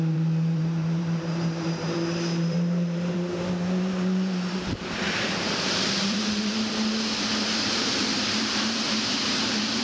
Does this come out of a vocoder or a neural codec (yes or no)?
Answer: yes